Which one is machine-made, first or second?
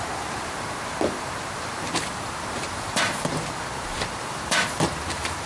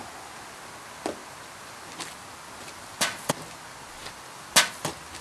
first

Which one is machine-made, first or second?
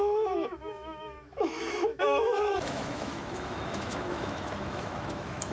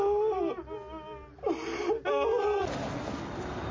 first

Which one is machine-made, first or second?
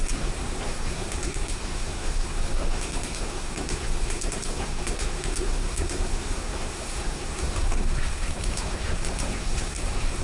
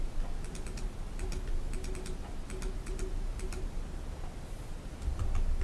first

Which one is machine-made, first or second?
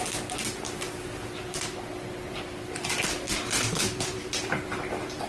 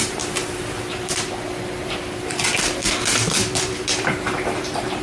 second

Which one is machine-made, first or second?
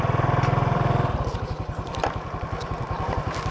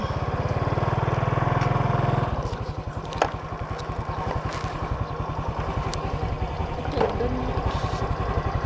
first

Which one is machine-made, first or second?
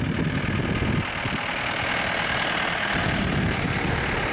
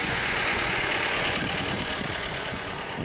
second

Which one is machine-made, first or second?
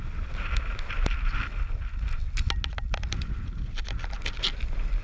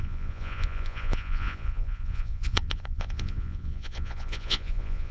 second